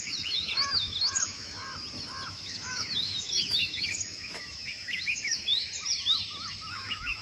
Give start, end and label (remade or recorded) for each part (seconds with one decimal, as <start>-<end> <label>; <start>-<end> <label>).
0.0-1.6 remade; 1.6-2.3 recorded; 2.3-5.5 remade; 5.5-6.7 recorded; 6.7-7.2 remade